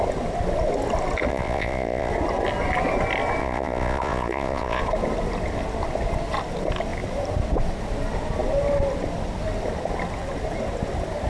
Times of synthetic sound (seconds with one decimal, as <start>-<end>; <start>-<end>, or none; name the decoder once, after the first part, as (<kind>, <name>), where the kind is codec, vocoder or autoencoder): 1.3-2.1 (vocoder, Vocos); 3.4-4.8